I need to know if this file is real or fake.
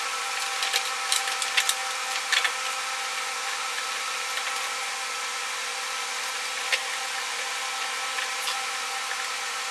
real